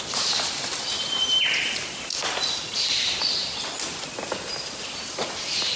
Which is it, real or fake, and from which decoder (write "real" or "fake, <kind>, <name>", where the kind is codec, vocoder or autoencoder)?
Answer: fake, vocoder, BigVGAN v2